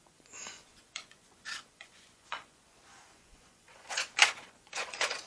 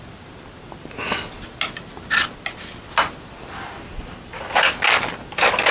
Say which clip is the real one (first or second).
second